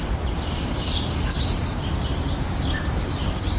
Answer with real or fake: real